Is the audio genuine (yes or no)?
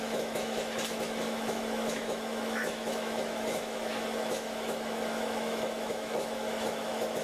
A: no